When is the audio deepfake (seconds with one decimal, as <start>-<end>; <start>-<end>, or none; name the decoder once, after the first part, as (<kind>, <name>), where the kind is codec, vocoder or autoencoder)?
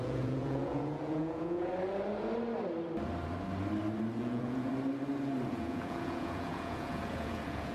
0.0-1.7 (vocoder, Vocos); 4.2-4.7; 5.5-7.7